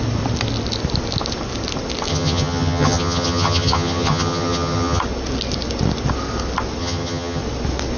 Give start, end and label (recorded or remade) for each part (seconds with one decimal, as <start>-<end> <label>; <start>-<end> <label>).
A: 0.0-2.1 recorded; 2.1-5.0 remade; 5.0-6.8 recorded; 6.8-7.4 remade; 7.4-8.0 recorded

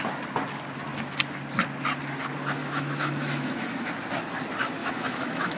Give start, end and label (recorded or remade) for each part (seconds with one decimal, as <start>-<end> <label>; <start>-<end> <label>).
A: 0.0-2.6 recorded; 2.6-3.9 remade; 3.9-4.8 recorded; 4.8-5.6 remade

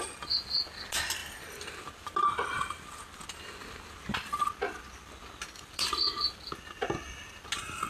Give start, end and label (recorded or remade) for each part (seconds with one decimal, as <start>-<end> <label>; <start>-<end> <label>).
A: 0.0-7.9 recorded

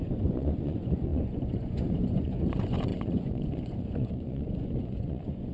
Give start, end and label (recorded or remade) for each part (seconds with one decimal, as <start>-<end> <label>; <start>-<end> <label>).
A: 0.0-5.5 remade

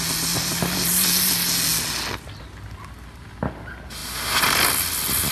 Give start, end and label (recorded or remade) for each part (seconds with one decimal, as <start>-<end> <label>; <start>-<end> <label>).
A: 0.0-5.3 recorded

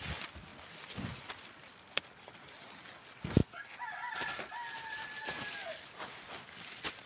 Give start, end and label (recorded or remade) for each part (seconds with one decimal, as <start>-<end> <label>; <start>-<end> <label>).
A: 0.0-7.1 recorded

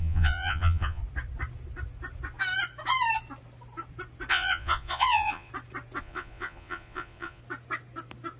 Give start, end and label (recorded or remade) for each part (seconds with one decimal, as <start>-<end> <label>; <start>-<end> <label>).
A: 0.0-1.0 remade; 1.0-4.3 recorded; 4.3-5.5 remade; 5.5-6.0 recorded; 6.0-7.4 remade; 7.4-8.4 recorded